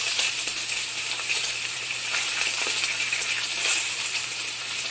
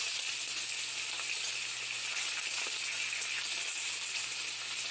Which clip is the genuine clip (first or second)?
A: second